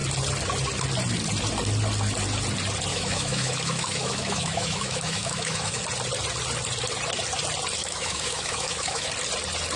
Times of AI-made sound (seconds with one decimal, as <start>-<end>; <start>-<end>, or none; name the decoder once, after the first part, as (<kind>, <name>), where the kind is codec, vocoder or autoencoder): 2.9-5.8 (autoencoder, DAC-VAE); 7.8-9.1